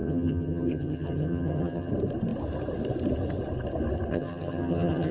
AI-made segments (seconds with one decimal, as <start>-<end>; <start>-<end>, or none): 0.0-1.9; 4.1-5.1